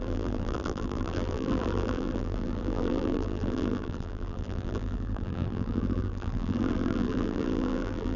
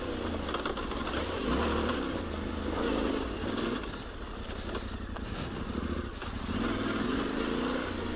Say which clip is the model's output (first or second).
first